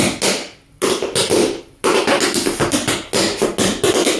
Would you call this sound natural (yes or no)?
yes